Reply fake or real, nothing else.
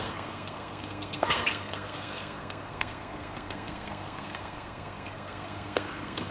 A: fake